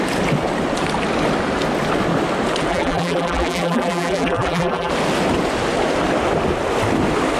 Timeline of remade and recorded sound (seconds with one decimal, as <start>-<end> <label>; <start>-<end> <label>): 0.0-2.7 recorded; 2.7-4.9 remade; 4.9-7.4 recorded